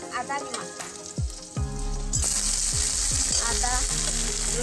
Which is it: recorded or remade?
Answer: recorded